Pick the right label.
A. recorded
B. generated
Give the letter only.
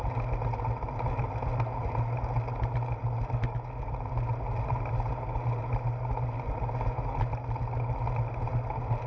A